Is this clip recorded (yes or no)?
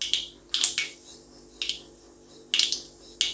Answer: yes